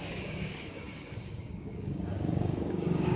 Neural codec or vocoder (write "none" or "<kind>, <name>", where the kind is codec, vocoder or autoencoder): codec, DAC